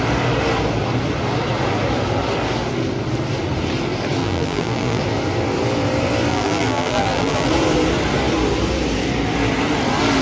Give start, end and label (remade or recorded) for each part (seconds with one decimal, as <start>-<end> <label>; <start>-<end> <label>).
0.0-4.2 recorded; 4.2-5.0 remade; 5.0-6.3 recorded; 6.3-7.5 remade; 7.5-10.2 recorded